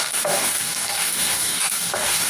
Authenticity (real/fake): fake